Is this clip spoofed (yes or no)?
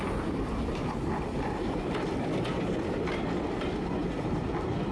no